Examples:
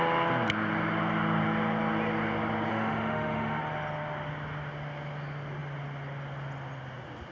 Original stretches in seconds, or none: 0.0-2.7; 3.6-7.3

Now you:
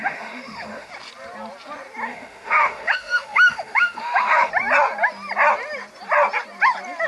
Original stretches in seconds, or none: 0.9-2.1; 4.5-7.1

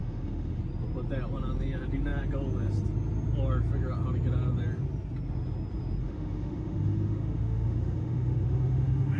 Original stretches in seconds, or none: 0.6-6.0

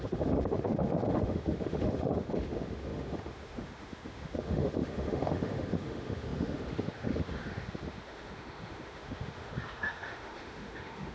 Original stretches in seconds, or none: none

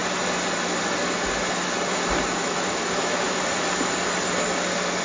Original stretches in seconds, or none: 0.0-2.4; 3.4-5.0